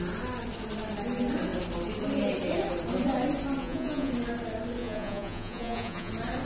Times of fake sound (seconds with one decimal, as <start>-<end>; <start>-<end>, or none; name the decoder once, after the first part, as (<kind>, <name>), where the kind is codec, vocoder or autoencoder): 3.6-4.1 (vocoder, Vocos); 4.8-6.1